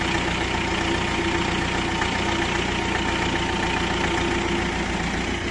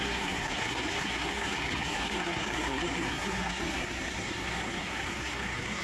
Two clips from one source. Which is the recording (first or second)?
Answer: first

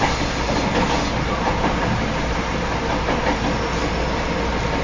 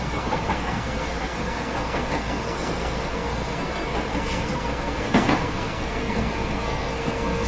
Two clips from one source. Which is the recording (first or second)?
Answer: first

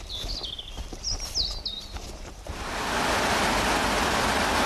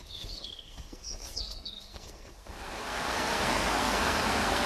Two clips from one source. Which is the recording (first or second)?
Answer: first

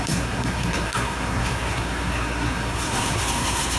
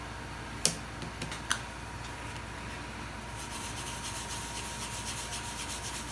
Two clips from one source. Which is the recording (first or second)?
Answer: second